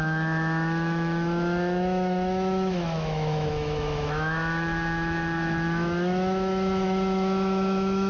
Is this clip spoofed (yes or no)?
yes